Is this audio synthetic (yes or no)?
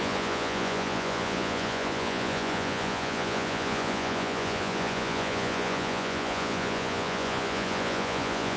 yes